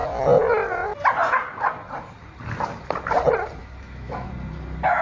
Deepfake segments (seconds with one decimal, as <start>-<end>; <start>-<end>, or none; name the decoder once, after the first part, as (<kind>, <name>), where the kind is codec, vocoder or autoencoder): 3.6-4.3 (autoencoder, DAC-VAE)